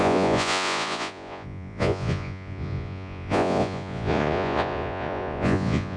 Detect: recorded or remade remade